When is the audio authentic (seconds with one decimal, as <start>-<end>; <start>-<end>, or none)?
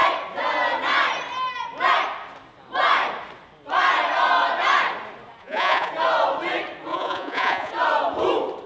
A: 0.0-5.4; 5.9-6.9; 7.7-8.7